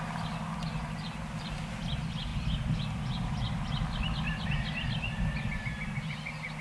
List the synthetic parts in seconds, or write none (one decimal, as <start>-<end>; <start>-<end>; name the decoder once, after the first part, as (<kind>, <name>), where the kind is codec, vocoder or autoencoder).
none